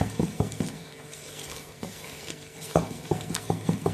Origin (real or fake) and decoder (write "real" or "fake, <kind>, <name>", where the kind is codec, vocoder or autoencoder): fake, codec, SNAC